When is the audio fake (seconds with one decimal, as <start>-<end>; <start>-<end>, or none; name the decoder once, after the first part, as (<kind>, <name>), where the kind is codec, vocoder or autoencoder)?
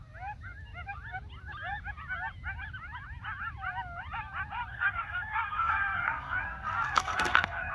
4.7-7.7 (codec, SNAC)